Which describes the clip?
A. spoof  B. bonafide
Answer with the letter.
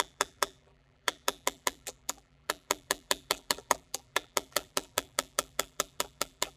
A